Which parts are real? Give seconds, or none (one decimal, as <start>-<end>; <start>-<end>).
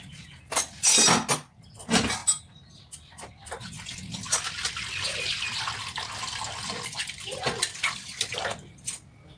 0.0-9.4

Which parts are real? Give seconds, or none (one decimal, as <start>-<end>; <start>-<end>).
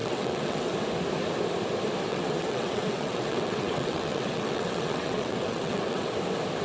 0.7-2.1; 6.1-6.6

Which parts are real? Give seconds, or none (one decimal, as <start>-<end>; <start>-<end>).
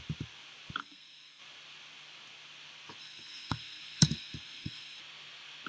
0.0-0.8; 1.4-3.0; 5.0-5.7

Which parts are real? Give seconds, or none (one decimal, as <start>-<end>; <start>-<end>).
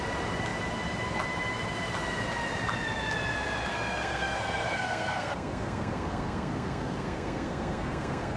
0.0-3.7